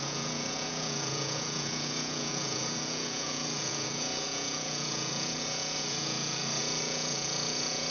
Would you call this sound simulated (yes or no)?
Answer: yes